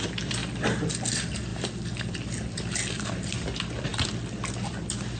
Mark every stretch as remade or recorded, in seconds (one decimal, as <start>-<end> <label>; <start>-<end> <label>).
0.0-1.5 recorded; 1.5-3.3 remade; 3.3-5.2 recorded